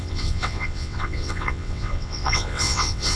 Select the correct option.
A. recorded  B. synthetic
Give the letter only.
B